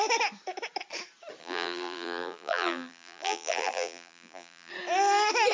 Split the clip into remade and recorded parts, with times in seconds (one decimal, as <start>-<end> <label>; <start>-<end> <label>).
0.0-1.4 recorded; 1.4-4.7 remade; 4.7-5.5 recorded